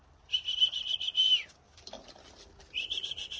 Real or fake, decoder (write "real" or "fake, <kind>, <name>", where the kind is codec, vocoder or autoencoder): real